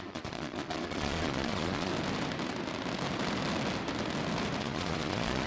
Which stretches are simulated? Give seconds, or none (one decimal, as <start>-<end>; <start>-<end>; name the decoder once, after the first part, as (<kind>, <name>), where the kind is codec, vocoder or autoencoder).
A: 0.0-1.9 (vocoder, Vocos); 4.6-5.5